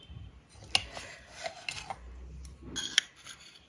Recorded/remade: recorded